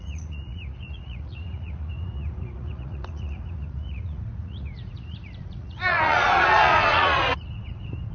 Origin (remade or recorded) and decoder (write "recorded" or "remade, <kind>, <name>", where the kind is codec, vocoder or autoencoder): remade, vocoder, Vocos